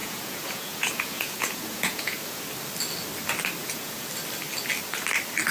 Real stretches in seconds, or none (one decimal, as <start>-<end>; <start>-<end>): 2.5-3.6; 4.1-5.5